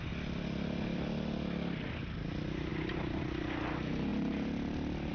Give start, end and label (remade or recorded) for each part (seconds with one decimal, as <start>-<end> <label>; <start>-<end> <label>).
0.0-5.1 recorded